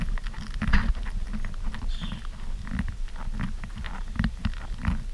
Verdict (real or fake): real